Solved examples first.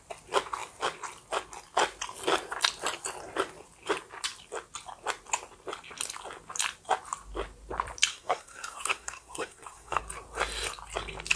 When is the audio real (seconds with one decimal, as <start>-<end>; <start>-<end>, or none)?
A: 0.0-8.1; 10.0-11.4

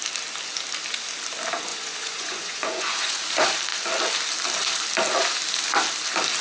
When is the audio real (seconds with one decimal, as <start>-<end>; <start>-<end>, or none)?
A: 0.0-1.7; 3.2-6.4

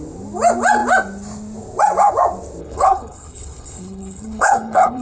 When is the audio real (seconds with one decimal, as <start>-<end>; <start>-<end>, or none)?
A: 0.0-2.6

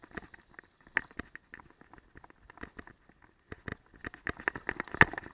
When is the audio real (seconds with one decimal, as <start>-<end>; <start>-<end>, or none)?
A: 0.0-5.3

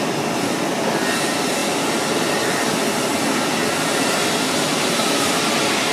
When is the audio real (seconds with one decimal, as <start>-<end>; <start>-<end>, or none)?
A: 0.0-5.9

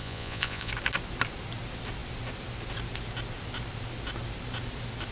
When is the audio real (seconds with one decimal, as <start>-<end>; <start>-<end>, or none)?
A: 0.7-5.1